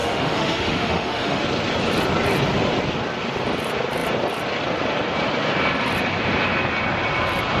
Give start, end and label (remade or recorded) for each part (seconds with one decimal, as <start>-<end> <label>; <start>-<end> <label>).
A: 0.0-1.4 remade; 1.4-7.6 recorded